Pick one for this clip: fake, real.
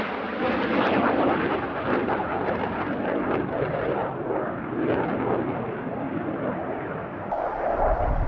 real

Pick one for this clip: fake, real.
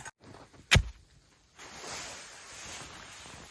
real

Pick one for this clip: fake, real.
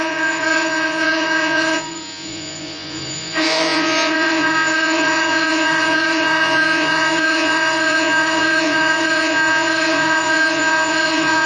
fake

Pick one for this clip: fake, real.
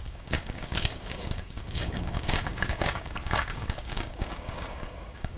fake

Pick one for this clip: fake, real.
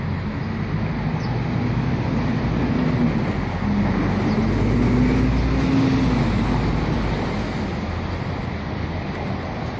real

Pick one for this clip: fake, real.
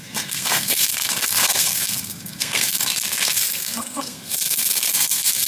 fake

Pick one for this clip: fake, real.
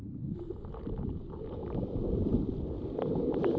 real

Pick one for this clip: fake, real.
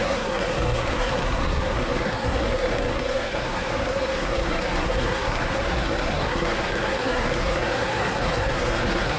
fake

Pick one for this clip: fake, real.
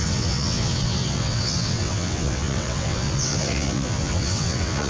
fake